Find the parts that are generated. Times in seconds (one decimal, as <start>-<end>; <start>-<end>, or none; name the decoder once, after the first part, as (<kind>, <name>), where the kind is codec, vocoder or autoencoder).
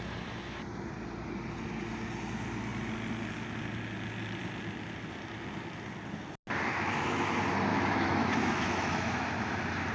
6.7-7.3 (autoencoder, DAC-VAE); 7.7-9.2